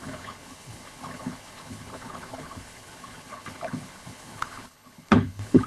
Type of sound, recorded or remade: remade